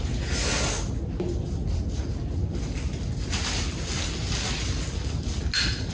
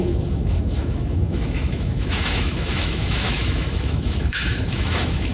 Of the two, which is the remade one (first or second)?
second